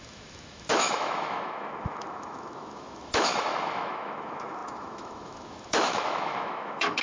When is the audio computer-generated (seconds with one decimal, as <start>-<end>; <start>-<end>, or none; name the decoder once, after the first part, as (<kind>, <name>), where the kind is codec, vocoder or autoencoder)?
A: 0.0-7.0 (autoencoder, DAC-VAE)